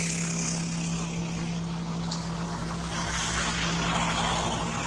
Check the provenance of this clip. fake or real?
real